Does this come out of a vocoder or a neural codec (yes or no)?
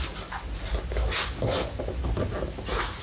no